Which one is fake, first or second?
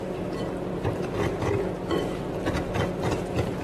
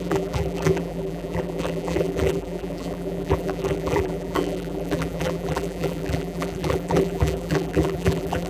second